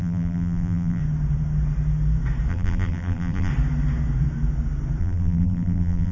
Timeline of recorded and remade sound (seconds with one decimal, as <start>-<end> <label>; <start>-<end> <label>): 0.0-1.0 remade; 1.0-2.5 recorded; 2.5-3.5 remade; 3.5-5.0 recorded; 5.0-6.1 remade